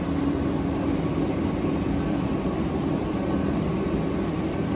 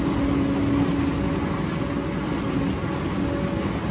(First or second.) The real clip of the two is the second